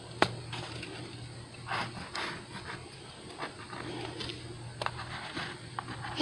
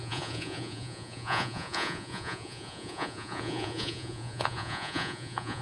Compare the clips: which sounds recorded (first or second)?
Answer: first